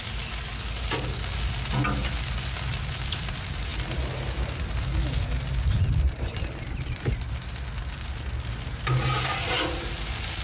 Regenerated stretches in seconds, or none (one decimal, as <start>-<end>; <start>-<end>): 2.7-3.3